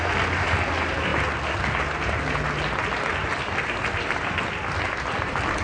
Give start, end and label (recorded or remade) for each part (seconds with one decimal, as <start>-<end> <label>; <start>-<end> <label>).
0.0-5.6 recorded